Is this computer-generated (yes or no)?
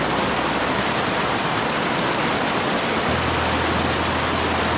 no